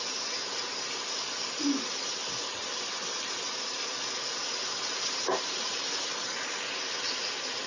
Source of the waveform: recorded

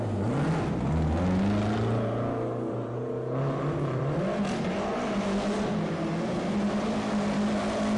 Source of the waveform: recorded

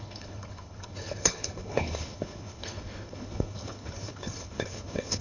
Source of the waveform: remade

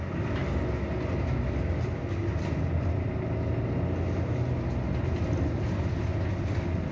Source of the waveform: recorded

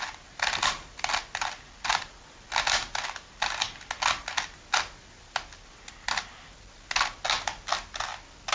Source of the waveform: recorded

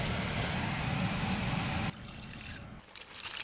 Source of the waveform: recorded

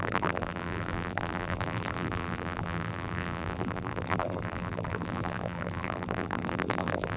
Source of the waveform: remade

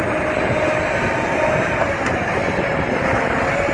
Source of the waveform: recorded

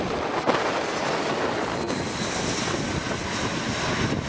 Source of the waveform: recorded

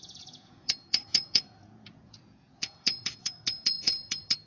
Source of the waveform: remade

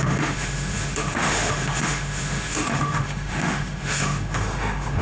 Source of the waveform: remade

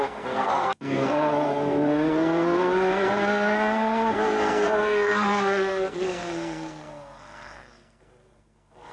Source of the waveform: remade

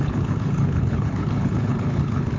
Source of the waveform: remade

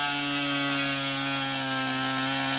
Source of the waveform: recorded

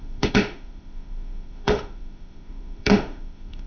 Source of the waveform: remade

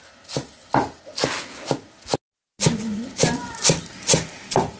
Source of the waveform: recorded